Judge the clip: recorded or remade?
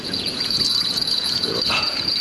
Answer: remade